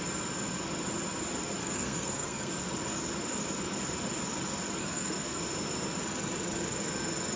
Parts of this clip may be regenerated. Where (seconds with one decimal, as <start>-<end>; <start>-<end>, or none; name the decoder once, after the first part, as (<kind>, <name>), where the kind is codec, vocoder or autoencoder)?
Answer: 1.6-2.5 (codec, SNAC); 4.8-5.4